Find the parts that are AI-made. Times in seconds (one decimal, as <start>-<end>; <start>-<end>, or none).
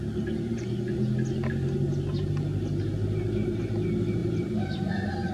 4.2-5.3